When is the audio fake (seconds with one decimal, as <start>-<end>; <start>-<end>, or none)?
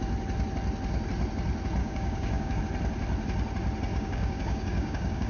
1.8-2.6; 3.9-5.3